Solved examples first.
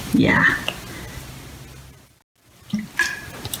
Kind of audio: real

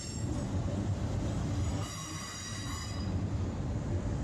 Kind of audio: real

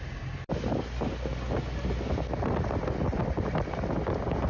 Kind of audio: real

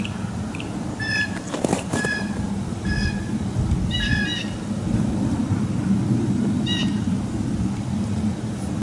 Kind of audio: fake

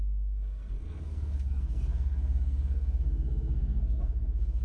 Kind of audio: fake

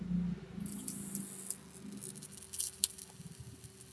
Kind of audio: real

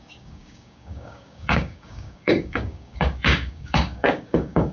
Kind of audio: fake